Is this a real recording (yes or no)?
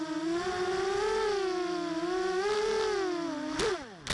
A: yes